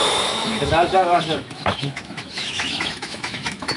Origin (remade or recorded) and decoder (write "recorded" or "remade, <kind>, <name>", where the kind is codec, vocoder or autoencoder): remade, autoencoder, DAC-VAE